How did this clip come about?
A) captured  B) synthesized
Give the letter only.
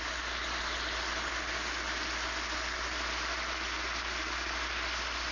A